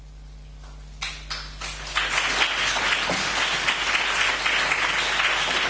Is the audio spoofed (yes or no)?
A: no